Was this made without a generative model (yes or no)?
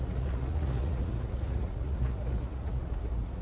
no